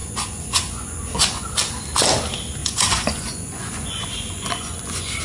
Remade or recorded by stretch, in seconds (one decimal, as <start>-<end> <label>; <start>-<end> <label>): 0.0-1.5 remade; 1.5-2.6 recorded; 2.6-5.2 remade